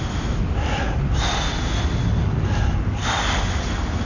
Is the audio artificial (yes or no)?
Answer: no